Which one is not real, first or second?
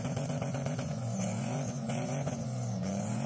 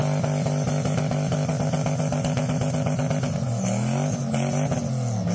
first